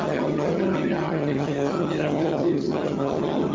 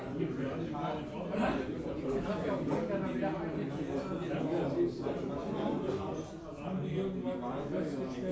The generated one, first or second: first